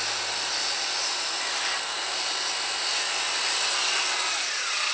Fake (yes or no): no